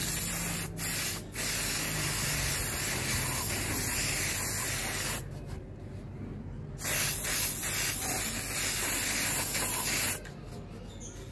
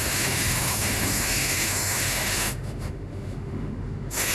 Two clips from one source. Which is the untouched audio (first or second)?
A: first